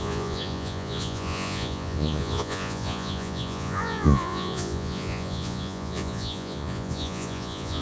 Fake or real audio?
fake